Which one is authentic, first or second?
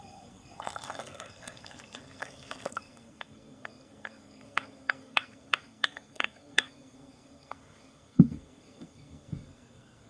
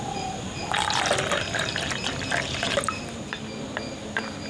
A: second